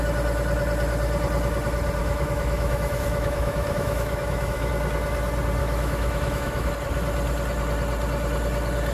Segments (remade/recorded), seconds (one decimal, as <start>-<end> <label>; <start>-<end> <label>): 0.0-2.0 recorded; 2.0-4.7 remade; 4.7-5.6 recorded; 5.6-6.7 remade; 6.7-8.9 recorded

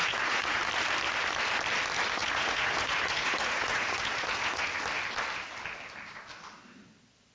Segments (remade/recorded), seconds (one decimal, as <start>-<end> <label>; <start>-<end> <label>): 0.0-0.6 remade; 0.6-2.2 recorded; 2.2-4.6 remade; 4.6-7.3 recorded